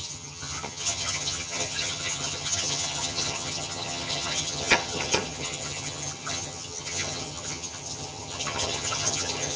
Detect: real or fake fake